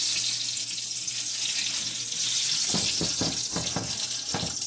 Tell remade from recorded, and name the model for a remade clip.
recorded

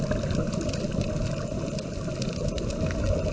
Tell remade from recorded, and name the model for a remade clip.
recorded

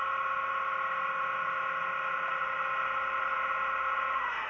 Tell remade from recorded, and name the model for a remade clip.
recorded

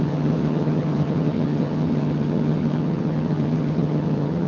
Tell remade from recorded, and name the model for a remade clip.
remade, vocoder, HiFi-GAN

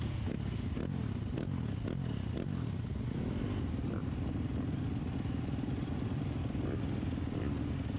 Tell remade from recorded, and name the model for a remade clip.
recorded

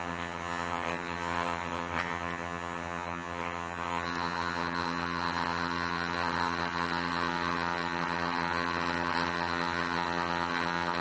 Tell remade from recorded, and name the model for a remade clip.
remade, vocoder, HiFi-GAN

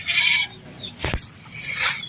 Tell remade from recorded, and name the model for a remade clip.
recorded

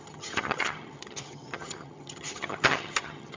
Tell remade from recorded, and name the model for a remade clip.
remade, vocoder, HiFi-GAN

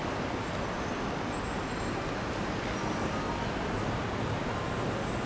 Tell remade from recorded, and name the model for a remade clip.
recorded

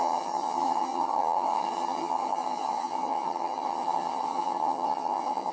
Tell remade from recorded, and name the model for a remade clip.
remade, vocoder, HiFi-GAN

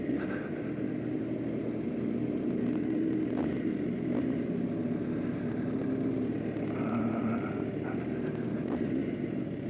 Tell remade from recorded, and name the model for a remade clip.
recorded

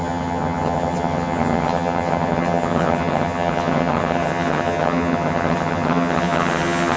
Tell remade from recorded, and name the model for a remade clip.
remade, vocoder, HiFi-GAN